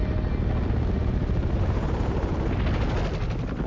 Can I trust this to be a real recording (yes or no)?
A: yes